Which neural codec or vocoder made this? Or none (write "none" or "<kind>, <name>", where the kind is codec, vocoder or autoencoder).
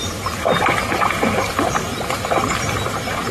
none